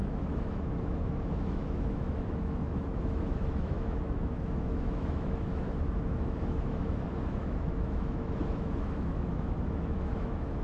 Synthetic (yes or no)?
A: yes